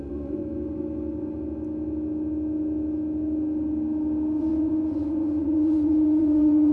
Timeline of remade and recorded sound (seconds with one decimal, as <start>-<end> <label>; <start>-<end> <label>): 0.0-0.4 remade; 0.4-4.4 recorded; 4.4-6.7 remade